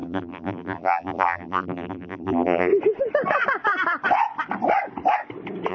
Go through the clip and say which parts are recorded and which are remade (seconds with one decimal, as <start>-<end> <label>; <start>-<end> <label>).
0.0-2.7 remade; 2.7-5.7 recorded